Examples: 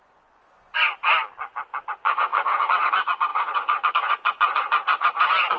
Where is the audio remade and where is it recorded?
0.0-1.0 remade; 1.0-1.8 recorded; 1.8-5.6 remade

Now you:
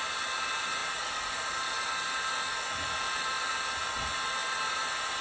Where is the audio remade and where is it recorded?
0.0-5.2 recorded

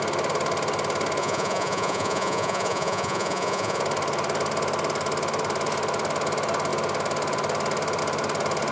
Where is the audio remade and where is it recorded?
0.0-1.2 recorded; 1.2-3.8 remade; 3.8-8.7 recorded

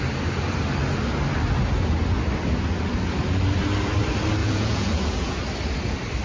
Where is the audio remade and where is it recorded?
0.0-4.4 recorded; 4.4-5.4 remade; 5.4-6.2 recorded

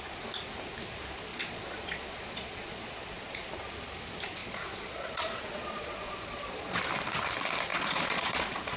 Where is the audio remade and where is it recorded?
0.0-1.3 recorded; 1.3-3.5 remade; 3.5-4.4 recorded; 4.4-6.8 remade; 6.8-7.7 recorded; 7.7-8.8 remade

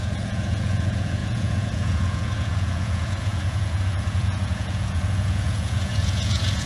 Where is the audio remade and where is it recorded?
0.0-6.7 remade